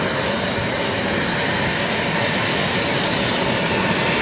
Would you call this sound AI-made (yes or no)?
no